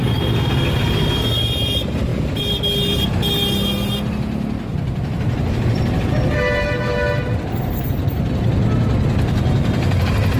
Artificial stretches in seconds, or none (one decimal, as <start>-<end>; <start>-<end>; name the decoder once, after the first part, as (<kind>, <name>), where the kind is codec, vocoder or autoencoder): 4.7-8.5 (vocoder, BigVGAN v2)